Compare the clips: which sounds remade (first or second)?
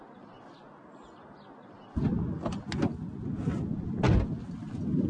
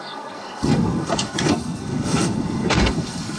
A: second